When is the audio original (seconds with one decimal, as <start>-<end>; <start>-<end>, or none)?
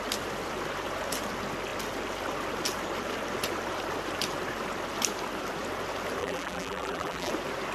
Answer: 0.0-6.2; 7.3-7.7